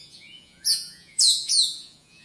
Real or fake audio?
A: fake